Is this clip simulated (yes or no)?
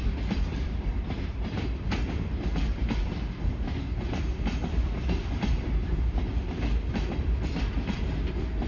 yes